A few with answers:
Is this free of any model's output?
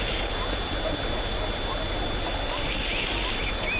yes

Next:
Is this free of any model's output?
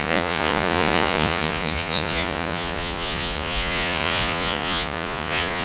no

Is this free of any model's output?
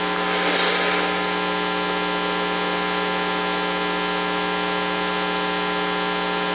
yes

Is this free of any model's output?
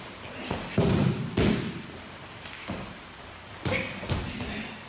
yes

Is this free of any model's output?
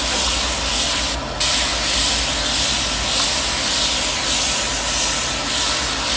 yes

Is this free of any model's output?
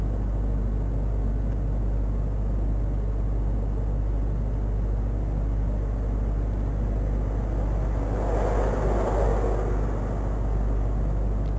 yes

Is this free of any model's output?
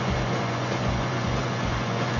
no